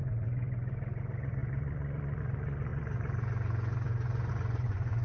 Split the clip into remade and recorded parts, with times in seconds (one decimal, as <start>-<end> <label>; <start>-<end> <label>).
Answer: 0.0-5.0 remade